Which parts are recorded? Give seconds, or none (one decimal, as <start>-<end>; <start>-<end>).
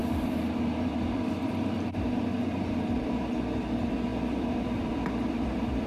3.2-4.1